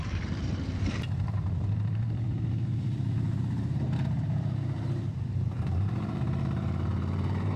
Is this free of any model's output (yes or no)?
no